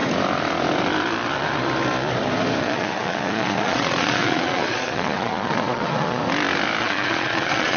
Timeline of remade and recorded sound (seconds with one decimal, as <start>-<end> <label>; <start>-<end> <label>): 0.0-2.6 recorded; 2.6-6.2 remade; 6.2-6.8 recorded; 6.8-7.8 remade